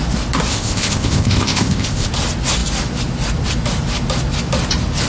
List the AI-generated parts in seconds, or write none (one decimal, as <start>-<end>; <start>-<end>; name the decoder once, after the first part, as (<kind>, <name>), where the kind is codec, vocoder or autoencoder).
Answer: 0.5-2.1 (codec, ZipCodec)